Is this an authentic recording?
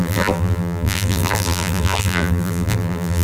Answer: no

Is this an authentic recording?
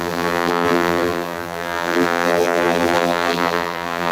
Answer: no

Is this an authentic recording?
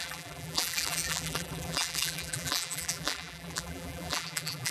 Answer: no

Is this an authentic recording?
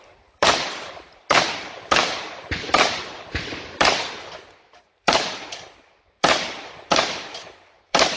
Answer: no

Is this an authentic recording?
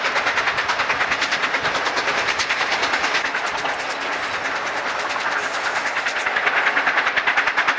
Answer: yes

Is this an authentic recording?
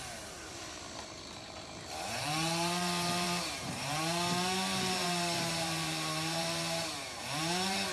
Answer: no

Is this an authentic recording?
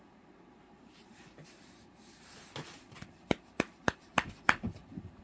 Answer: no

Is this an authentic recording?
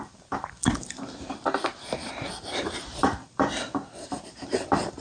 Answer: no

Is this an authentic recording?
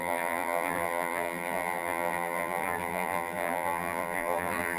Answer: no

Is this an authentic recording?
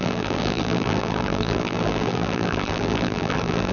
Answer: no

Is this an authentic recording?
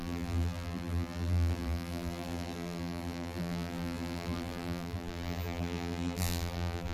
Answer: no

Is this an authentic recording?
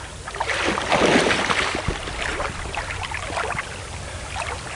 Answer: yes